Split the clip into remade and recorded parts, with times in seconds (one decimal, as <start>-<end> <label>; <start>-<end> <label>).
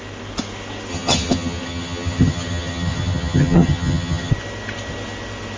0.0-0.9 recorded; 0.9-4.3 remade; 4.3-5.6 recorded